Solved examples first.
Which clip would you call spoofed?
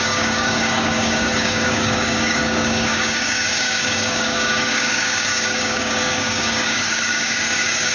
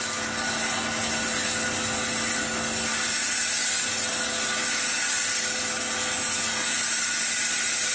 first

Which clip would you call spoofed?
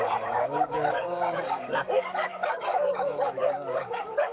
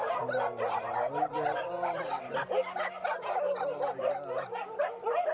first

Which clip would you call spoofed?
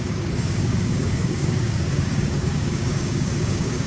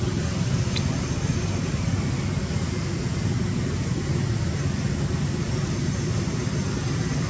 first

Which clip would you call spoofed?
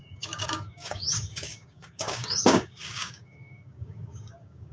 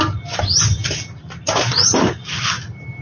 first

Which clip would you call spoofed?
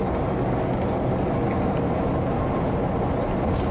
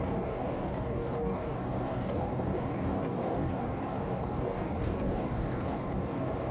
second